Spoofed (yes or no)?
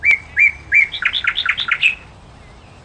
no